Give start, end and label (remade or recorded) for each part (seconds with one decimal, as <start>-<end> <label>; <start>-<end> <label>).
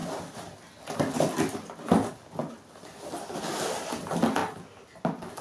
0.0-5.4 recorded